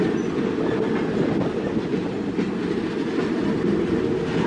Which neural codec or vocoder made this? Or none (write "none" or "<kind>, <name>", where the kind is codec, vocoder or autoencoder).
none